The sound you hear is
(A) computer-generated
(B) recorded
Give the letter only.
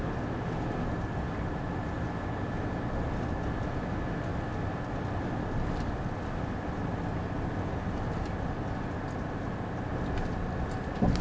B